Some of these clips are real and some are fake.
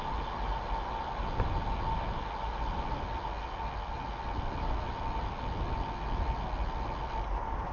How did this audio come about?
real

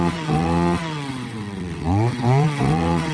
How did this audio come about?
fake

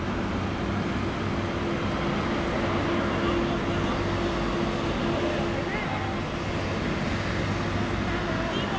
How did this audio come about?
real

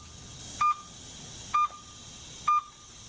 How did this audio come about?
real